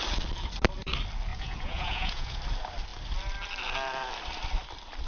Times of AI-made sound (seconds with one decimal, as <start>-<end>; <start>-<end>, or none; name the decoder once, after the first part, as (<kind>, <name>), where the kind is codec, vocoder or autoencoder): 1.3-2.4 (vocoder, Vocos)